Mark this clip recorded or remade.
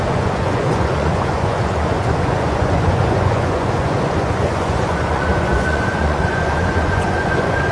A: remade